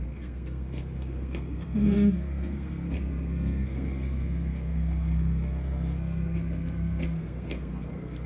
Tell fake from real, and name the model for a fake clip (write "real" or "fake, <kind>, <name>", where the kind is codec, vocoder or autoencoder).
fake, codec, SNAC